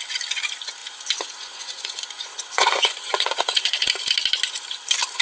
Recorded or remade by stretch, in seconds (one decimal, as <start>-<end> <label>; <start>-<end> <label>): 0.0-0.8 recorded; 0.8-3.9 remade; 3.9-5.2 recorded